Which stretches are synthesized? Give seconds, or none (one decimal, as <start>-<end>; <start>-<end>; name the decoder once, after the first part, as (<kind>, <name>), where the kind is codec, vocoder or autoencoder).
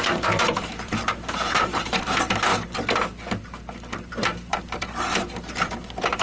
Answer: 0.0-2.5 (vocoder, BigVGAN v2); 4.1-6.2